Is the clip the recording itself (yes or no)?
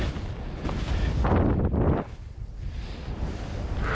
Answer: yes